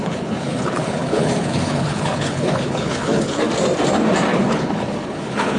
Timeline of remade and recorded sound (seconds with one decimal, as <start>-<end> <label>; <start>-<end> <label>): 0.0-3.4 remade; 3.4-4.3 recorded; 4.3-5.6 remade